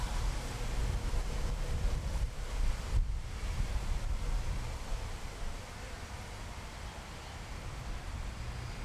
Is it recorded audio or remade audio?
recorded